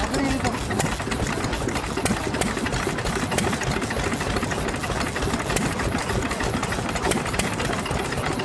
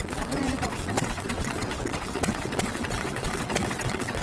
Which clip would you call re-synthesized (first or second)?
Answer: second